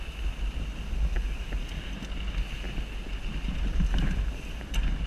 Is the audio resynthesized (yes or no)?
no